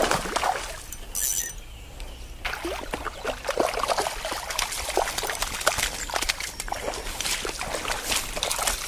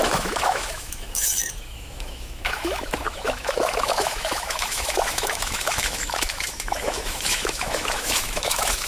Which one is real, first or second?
first